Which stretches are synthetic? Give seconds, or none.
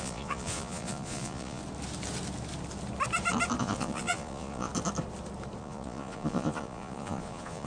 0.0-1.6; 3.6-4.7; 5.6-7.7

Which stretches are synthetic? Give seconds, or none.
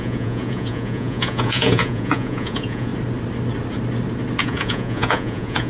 0.0-2.9; 4.4-5.7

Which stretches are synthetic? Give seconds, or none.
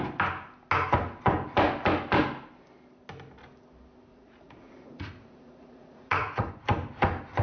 4.1-6.5